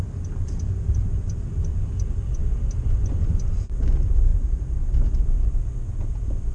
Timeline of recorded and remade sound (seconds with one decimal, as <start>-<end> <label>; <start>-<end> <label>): 0.0-6.5 recorded